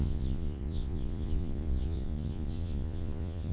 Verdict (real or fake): fake